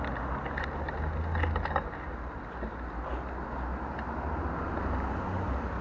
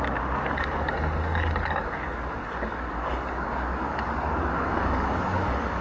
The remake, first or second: second